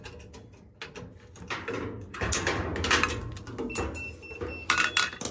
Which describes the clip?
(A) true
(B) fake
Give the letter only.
A